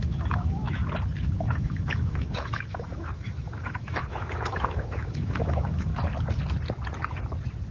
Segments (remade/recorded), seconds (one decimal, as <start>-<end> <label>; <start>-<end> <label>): 0.0-0.8 remade; 0.8-1.4 recorded; 1.4-5.9 remade; 5.9-7.7 recorded